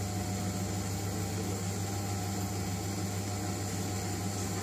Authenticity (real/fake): real